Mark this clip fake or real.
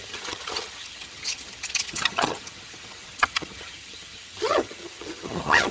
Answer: fake